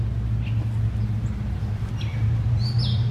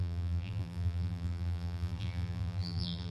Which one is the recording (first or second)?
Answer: first